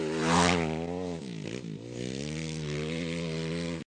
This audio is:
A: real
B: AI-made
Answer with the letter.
A